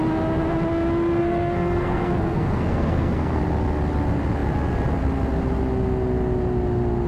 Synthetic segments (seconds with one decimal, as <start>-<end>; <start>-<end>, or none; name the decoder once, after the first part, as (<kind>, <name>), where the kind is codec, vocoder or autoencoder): 1.2-3.4 (codec, SNAC)